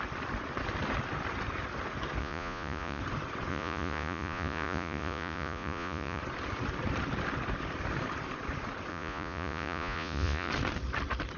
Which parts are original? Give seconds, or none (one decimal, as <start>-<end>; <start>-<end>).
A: 0.0-2.2; 3.0-3.5; 6.2-8.9; 10.5-11.4